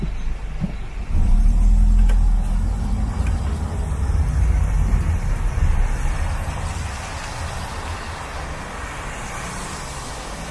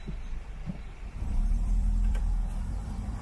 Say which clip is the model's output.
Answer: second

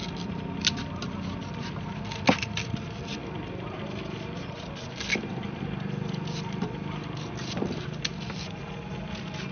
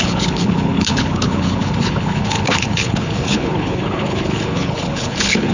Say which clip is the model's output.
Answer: second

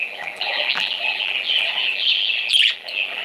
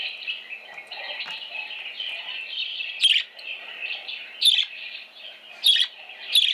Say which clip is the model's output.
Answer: first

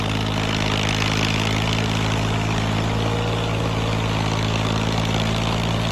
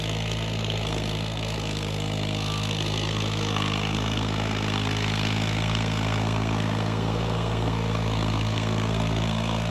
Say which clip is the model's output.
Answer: second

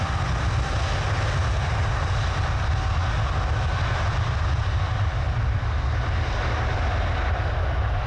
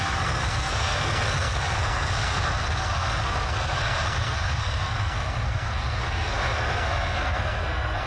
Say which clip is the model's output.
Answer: second